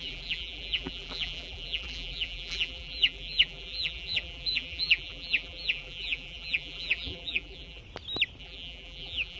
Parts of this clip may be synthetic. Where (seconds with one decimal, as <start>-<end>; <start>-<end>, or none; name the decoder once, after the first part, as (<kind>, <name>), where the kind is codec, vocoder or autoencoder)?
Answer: 0.0-7.8 (vocoder, BigVGAN v2); 8.4-9.4